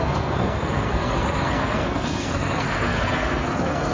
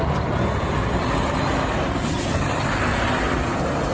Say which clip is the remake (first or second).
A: first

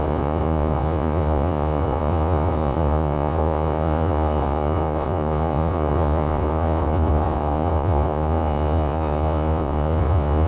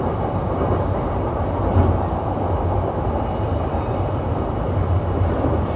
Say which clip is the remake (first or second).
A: first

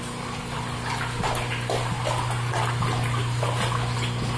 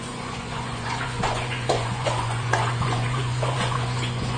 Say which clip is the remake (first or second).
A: second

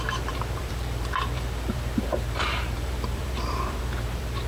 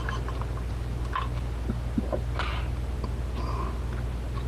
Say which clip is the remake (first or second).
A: first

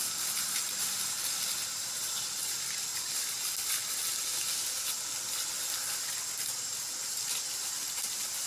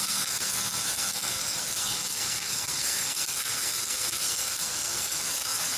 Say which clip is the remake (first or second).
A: second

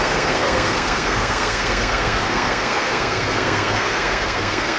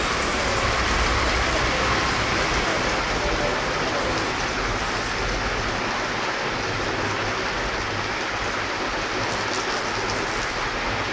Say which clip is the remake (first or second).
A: first